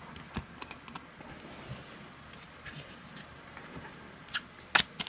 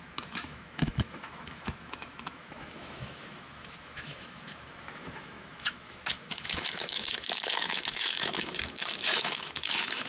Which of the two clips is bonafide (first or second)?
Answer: first